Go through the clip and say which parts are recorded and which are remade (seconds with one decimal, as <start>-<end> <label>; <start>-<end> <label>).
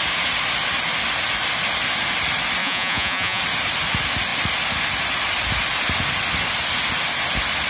0.0-2.6 recorded; 2.6-3.4 remade; 3.4-7.7 recorded